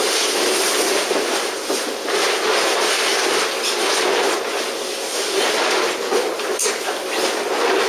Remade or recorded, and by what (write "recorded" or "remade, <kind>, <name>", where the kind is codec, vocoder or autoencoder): recorded